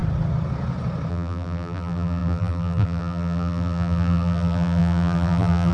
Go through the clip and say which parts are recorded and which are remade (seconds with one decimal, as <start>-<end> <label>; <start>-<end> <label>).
0.0-1.1 recorded; 1.1-5.7 remade